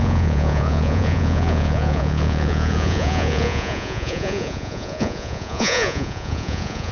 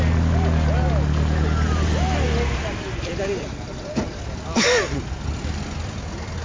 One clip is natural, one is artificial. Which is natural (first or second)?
second